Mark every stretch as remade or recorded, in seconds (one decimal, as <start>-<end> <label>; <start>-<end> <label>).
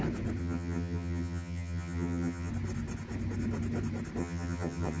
0.0-0.4 recorded; 0.4-2.5 remade; 2.5-4.2 recorded; 4.2-5.0 remade